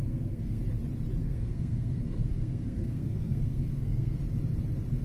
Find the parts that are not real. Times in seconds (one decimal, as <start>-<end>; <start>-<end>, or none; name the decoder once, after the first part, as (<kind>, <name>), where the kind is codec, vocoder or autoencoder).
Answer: 0.0-0.6 (codec, SNAC); 1.2-4.2